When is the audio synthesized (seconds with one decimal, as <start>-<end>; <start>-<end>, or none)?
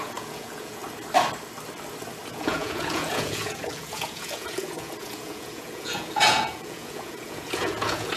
0.0-0.8; 2.3-8.2